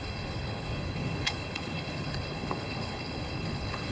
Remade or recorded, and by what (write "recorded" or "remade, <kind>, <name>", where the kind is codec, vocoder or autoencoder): remade, codec, HILCodec